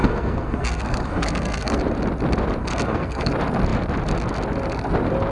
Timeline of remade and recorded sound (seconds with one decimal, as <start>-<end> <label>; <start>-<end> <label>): 0.0-1.8 remade; 1.8-2.6 recorded; 2.6-3.3 remade; 3.3-5.3 recorded